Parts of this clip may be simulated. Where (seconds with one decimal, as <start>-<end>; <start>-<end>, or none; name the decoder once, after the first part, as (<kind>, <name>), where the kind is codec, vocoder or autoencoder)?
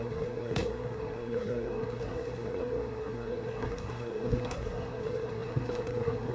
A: 0.0-6.3 (codec, SNAC)